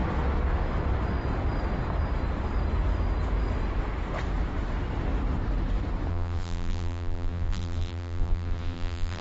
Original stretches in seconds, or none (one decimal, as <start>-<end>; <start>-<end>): 0.0-6.1